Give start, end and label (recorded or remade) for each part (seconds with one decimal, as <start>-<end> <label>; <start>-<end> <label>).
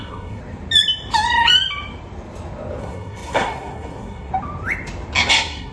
0.0-0.4 remade; 0.4-2.8 recorded; 2.8-4.3 remade; 4.3-5.3 recorded; 5.3-5.7 remade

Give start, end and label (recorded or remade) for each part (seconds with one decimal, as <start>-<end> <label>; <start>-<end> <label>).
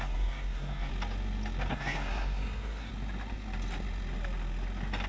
0.0-0.9 remade; 0.9-1.7 recorded; 1.7-2.9 remade; 2.9-5.1 recorded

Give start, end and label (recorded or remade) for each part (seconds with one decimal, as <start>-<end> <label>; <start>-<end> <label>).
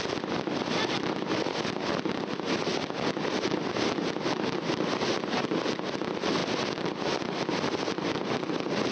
0.0-8.9 recorded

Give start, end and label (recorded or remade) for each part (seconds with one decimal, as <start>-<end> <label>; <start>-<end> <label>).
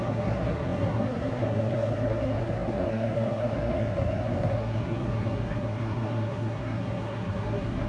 0.0-7.9 remade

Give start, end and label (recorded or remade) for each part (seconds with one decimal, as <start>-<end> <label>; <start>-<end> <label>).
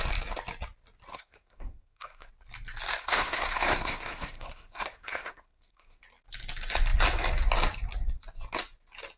0.0-1.1 recorded; 1.1-2.3 remade; 2.3-2.9 recorded; 2.9-6.0 remade; 6.0-9.2 recorded